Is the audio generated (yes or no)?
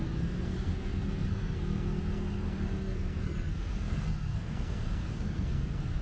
yes